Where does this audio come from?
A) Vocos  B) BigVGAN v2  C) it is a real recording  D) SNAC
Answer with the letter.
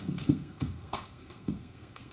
D